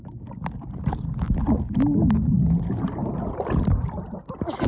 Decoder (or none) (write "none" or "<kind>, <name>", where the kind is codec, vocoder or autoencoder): none